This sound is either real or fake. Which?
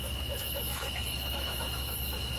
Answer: fake